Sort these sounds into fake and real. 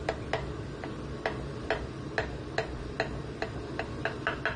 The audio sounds real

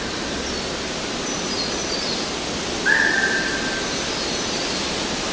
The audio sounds real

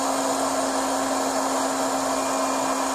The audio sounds real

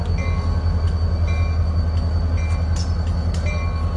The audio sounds real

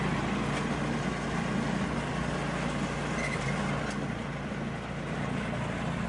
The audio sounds real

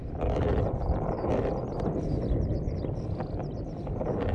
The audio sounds real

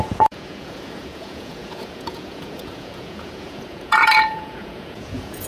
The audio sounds fake